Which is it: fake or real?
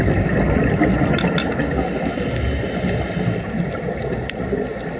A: real